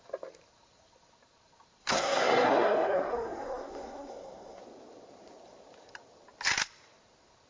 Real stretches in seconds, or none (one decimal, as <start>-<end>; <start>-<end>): 0.0-1.8; 4.6-7.5